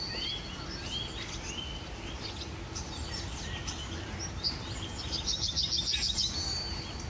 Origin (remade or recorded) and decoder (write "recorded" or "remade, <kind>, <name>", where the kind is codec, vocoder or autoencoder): recorded